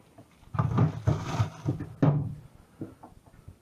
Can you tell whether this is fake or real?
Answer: real